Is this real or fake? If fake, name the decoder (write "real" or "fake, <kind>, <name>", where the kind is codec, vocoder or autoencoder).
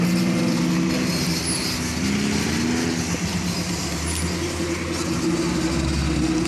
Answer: real